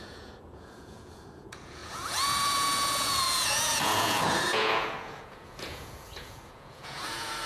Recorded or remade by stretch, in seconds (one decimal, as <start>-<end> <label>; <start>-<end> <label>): 0.0-7.5 remade